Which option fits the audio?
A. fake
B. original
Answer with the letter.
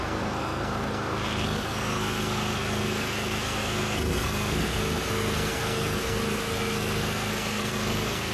A